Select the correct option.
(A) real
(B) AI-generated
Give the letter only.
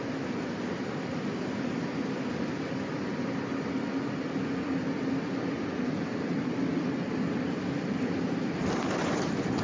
A